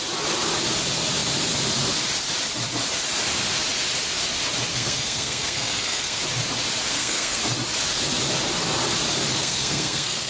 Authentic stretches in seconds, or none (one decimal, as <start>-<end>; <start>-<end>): 0.0-4.7; 6.2-6.9; 7.4-9.3